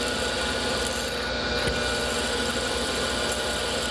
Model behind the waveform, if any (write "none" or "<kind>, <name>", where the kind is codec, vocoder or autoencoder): none